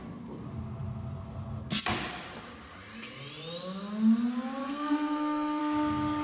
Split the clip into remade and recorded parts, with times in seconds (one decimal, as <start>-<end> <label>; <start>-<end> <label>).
0.0-4.6 recorded; 4.6-5.6 remade; 5.6-6.2 recorded